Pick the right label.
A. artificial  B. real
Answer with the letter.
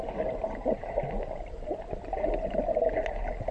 B